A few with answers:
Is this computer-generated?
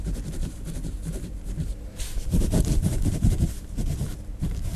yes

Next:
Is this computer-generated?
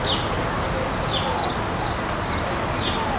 no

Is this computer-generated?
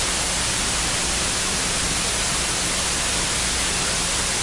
no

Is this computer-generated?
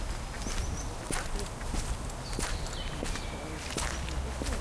no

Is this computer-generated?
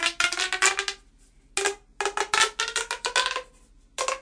no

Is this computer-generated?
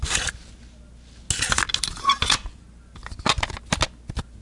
no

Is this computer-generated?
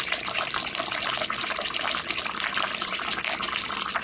yes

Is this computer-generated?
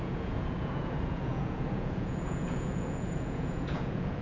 yes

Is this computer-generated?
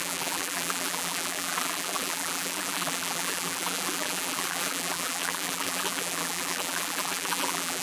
yes